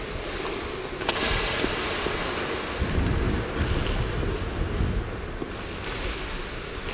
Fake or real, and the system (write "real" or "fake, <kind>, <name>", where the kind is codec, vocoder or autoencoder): real